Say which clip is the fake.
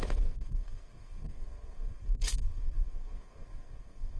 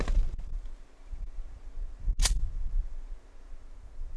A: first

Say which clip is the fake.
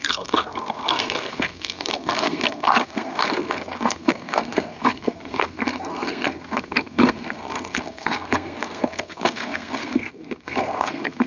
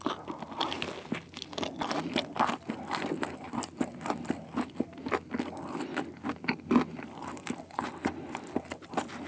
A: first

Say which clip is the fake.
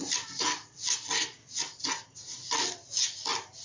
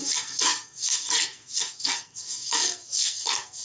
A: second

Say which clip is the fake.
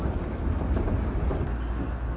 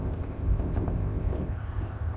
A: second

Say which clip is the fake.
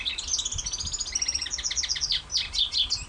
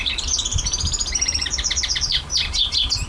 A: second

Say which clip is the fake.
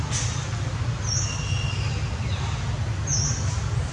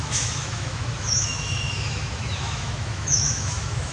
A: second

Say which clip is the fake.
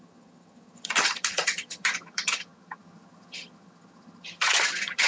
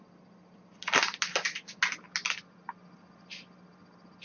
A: first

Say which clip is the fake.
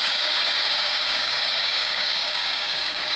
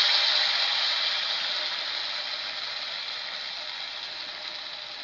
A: first